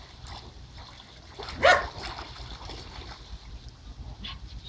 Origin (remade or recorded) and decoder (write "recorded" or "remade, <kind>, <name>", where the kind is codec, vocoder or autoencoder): recorded